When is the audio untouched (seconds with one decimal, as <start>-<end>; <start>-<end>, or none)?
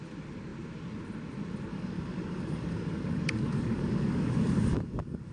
0.0-1.7